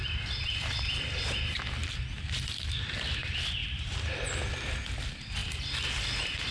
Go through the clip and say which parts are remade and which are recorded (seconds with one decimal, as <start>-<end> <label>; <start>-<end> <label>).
0.0-6.5 recorded